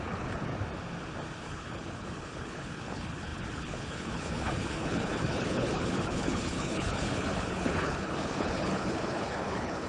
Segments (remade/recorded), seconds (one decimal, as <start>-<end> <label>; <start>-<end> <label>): 0.0-0.5 remade; 0.5-1.4 recorded; 1.4-9.9 remade

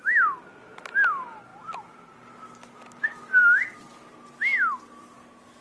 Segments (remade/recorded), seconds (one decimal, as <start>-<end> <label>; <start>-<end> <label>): 0.0-5.6 recorded

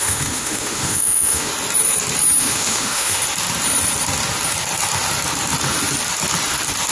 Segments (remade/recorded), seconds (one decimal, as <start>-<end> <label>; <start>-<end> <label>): 0.0-1.5 remade; 1.5-2.4 recorded; 2.4-3.2 remade; 3.2-6.9 recorded